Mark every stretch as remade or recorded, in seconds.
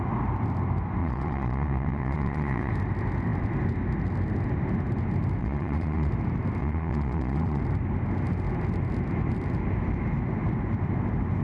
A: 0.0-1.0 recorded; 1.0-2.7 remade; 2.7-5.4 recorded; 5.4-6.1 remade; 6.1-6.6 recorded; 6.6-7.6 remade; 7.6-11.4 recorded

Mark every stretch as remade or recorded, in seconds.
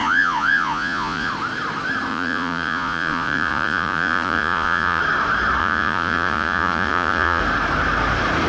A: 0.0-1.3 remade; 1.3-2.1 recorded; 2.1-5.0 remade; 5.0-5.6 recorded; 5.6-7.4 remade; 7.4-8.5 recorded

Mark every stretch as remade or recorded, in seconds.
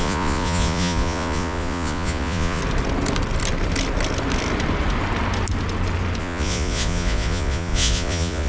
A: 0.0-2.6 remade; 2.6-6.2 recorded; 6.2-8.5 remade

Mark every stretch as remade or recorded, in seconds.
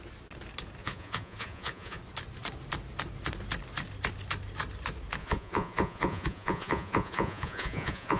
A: 0.0-0.8 recorded; 0.8-2.0 remade; 2.0-5.2 recorded; 5.2-8.2 remade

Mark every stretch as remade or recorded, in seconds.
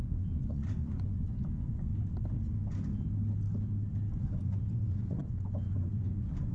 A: 0.0-1.9 remade; 1.9-4.2 recorded; 4.2-6.5 remade